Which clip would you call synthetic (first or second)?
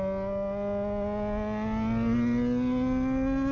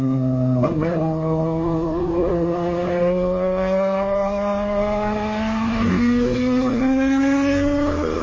second